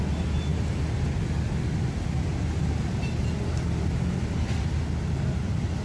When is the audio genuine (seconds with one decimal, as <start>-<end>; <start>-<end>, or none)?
0.0-5.8